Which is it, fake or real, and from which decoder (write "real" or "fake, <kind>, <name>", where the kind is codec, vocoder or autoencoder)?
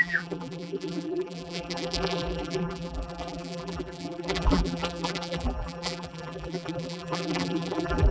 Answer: fake, vocoder, BigVGAN v2